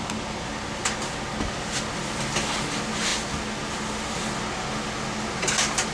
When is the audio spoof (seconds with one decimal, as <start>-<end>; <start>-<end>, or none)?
none